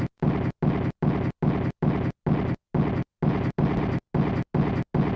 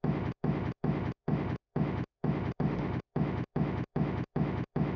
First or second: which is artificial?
second